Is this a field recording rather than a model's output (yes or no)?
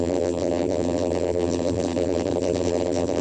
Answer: no